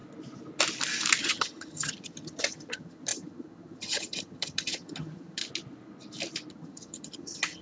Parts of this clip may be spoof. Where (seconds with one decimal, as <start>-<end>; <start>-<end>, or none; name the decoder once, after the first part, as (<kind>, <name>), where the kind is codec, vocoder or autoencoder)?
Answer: 1.2-5.4 (vocoder, HiFi-GAN); 6.5-7.6